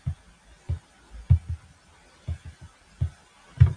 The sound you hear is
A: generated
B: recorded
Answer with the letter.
B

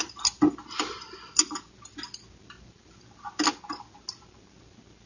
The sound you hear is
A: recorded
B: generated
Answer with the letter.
A